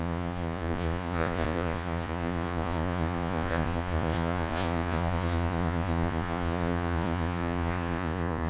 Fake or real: fake